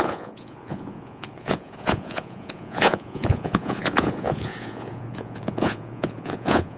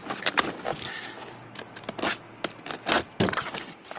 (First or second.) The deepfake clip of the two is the first